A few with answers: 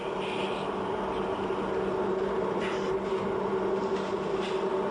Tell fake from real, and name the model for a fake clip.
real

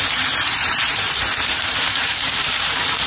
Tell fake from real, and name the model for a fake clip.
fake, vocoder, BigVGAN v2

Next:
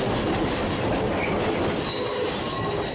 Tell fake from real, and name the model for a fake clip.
real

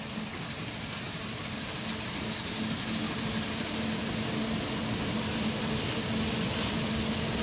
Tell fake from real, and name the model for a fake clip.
real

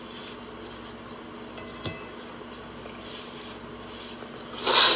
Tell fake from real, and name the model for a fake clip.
real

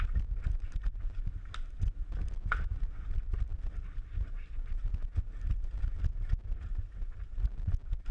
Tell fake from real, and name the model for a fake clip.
real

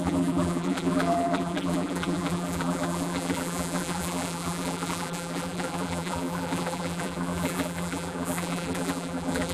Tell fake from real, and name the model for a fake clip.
fake, vocoder, BigVGAN v2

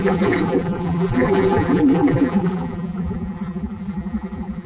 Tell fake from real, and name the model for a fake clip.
fake, vocoder, BigVGAN v2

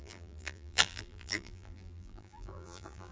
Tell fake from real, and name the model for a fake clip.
fake, vocoder, BigVGAN v2